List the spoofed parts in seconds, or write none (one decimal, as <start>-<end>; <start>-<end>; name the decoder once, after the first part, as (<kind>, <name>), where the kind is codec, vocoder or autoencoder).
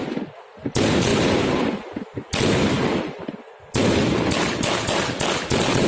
none